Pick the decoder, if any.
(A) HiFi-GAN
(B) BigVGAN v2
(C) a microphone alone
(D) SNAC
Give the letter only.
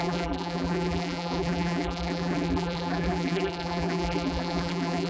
B